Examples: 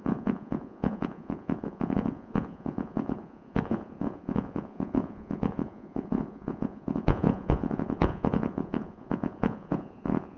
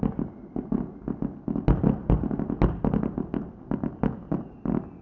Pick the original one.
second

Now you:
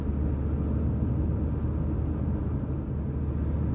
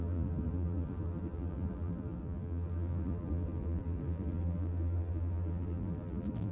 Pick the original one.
first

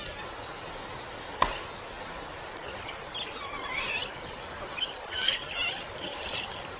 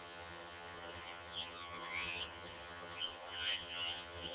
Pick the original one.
first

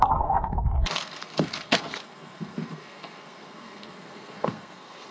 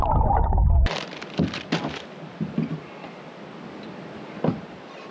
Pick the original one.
second